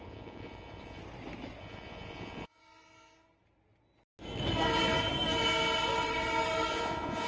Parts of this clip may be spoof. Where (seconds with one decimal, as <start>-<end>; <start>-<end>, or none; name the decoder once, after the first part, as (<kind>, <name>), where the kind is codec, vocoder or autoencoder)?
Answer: 0.0-1.0 (vocoder, Vocos); 1.6-2.6; 6.7-7.3